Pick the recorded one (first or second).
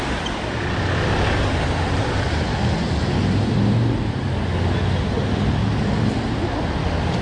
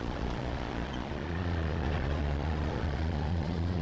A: first